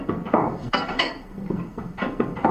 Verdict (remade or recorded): remade